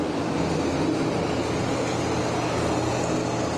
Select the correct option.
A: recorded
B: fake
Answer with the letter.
A